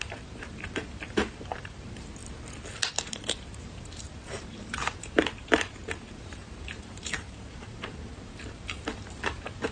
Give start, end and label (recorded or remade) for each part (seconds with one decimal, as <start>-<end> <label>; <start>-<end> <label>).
0.0-2.2 remade; 2.2-2.9 recorded; 2.9-9.7 remade